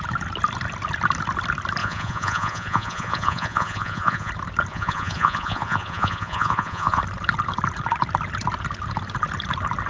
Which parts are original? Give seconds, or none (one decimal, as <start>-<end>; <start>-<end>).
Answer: 0.0-1.8; 4.3-4.7; 7.0-9.9